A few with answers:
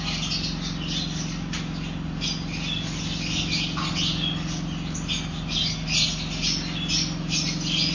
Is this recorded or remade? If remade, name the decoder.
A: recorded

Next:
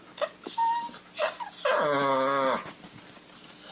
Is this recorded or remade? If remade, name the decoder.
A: recorded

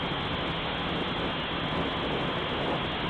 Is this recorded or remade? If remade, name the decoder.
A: recorded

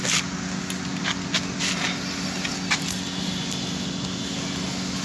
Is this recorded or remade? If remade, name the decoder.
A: recorded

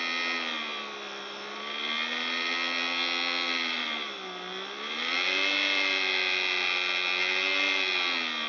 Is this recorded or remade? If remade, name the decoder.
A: recorded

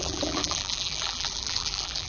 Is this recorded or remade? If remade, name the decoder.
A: remade, vocoder, BigVGAN v2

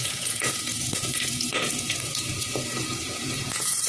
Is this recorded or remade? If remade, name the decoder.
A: remade, vocoder, Vocos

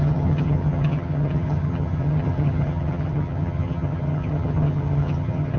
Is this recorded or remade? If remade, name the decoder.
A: remade, vocoder, HiFi-GAN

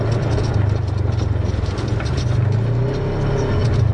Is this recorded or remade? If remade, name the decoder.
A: recorded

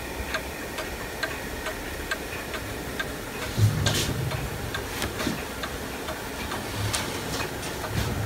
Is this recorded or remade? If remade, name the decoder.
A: recorded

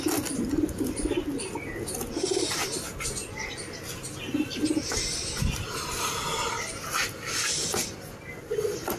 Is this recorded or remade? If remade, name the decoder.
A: recorded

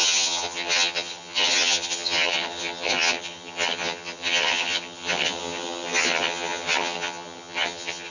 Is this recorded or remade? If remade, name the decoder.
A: remade, vocoder, HiFi-GAN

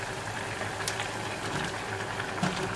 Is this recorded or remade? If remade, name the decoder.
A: recorded